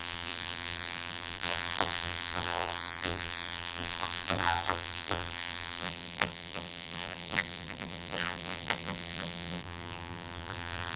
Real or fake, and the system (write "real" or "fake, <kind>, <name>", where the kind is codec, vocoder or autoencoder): fake, vocoder, BigVGAN v2